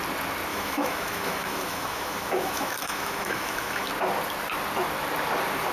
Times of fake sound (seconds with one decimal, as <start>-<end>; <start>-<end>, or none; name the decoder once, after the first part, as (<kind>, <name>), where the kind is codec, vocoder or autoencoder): 0.5-3.9 (autoencoder, DAC-VAE)